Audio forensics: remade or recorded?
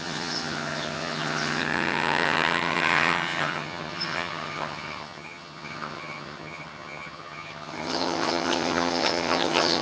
remade